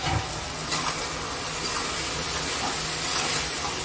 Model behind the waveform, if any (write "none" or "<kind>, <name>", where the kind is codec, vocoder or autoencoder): none